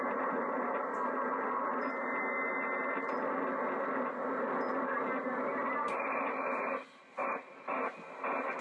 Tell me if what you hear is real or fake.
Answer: real